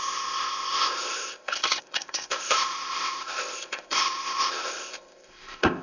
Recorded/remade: remade